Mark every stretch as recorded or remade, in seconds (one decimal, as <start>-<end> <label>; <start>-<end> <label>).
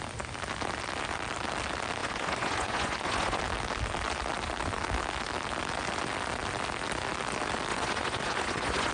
0.0-2.0 recorded; 2.0-3.4 remade; 3.4-7.7 recorded; 7.7-8.9 remade